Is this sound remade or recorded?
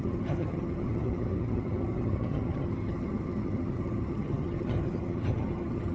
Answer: remade